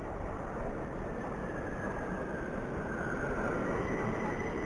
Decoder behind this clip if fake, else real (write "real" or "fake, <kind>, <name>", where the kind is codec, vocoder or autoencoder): real